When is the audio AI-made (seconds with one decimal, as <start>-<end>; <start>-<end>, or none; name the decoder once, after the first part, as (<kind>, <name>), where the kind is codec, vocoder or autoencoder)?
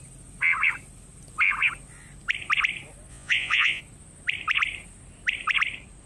3.1-3.8 (vocoder, Vocos)